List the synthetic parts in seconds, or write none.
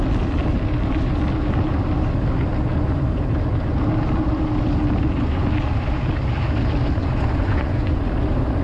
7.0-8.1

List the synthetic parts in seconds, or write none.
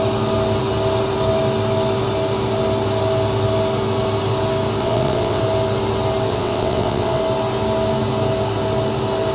4.8-5.4; 6.3-7.2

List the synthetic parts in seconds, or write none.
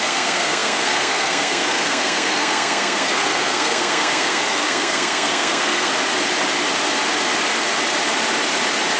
0.0-5.9